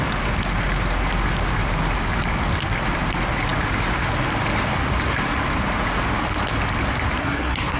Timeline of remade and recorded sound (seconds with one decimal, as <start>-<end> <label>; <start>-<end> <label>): 0.0-7.2 recorded; 7.2-7.8 remade